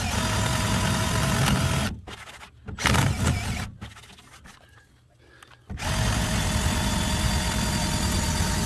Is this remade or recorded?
recorded